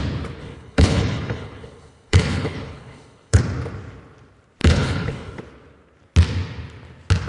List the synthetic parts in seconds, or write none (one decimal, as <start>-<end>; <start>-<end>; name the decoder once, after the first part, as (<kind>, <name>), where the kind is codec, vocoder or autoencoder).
0.4-3.4 (codec, HILCodec); 4.6-5.4

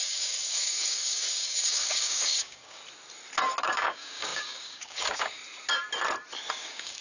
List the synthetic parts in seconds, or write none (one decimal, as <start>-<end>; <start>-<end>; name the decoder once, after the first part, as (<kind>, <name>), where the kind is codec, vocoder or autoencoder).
0.0-2.8 (codec, DAC); 3.6-5.4; 6.5-7.0